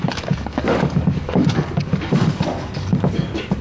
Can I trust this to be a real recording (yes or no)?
no